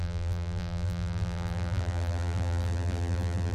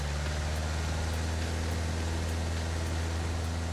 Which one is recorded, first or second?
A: second